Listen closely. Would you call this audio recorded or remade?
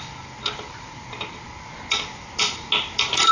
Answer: recorded